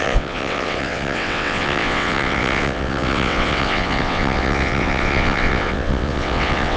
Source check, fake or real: fake